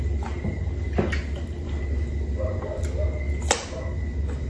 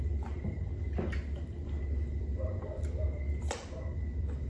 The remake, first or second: second